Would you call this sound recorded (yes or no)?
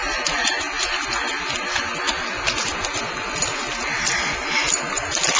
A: yes